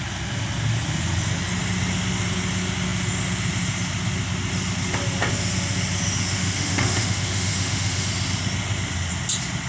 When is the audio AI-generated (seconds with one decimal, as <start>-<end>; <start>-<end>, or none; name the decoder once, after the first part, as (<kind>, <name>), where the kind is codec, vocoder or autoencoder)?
6.4-8.1 (autoencoder, DAC-VAE)